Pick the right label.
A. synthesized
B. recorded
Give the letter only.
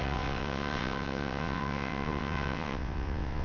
A